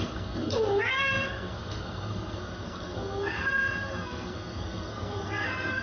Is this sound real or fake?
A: fake